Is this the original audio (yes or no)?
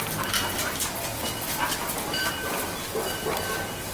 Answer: yes